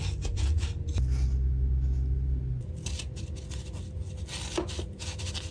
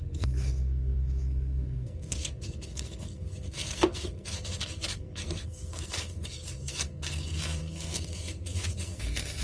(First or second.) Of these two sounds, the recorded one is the first